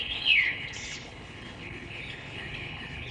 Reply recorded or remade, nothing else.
remade